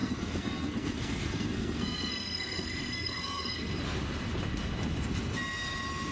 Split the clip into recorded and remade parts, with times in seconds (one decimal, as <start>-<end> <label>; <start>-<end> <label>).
0.0-3.7 remade; 3.7-6.1 recorded